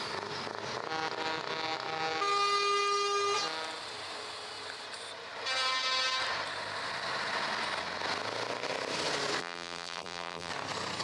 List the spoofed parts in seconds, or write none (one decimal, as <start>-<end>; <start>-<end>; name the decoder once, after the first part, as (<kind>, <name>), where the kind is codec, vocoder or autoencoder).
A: 9.4-10.5 (vocoder, BigVGAN v2)